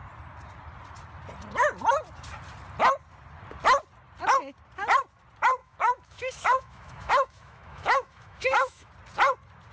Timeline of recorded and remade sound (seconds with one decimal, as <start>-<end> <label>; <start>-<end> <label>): 0.0-5.6 recorded; 5.6-8.9 remade; 8.9-9.7 recorded